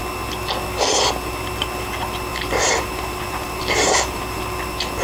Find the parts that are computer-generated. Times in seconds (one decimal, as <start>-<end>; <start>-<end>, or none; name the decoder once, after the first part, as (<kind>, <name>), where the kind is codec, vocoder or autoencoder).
2.3-4.4 (vocoder, BigVGAN v2)